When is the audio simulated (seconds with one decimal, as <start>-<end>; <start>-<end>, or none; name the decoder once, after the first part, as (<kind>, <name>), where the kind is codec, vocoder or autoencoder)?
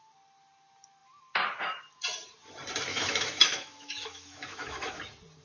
2.9-5.0 (autoencoder, DAC-VAE)